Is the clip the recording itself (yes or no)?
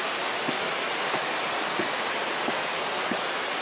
yes